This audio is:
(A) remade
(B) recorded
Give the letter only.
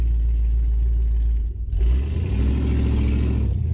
B